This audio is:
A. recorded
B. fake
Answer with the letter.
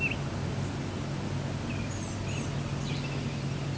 A